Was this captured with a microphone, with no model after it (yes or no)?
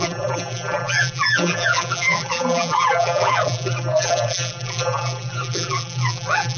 no